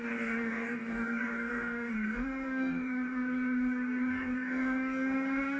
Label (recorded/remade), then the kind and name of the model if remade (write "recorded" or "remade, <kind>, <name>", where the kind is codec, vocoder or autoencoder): remade, codec, DAC